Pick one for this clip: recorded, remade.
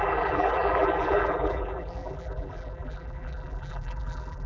remade